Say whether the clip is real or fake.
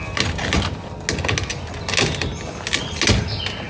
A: real